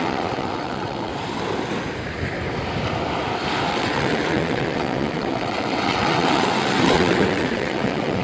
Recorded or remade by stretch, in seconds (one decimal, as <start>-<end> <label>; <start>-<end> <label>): 0.0-1.1 remade; 1.1-3.7 recorded; 3.7-8.2 remade